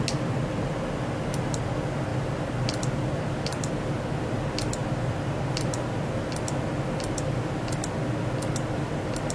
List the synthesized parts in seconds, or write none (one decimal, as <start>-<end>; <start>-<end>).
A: none